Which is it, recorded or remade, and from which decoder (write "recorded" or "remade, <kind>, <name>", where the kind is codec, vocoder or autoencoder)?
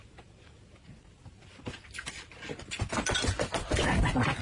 recorded